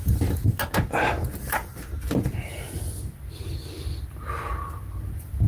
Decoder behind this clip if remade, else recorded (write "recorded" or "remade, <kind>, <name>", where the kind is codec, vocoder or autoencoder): recorded